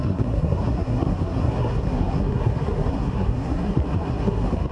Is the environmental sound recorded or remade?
remade